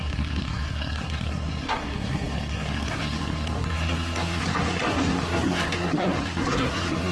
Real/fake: fake